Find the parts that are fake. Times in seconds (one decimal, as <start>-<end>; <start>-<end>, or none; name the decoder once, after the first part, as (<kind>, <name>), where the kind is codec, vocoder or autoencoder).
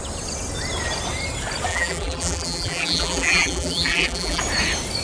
1.7-4.4 (vocoder, BigVGAN v2)